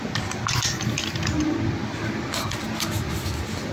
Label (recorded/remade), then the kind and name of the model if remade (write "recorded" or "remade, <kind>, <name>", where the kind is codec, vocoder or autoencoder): recorded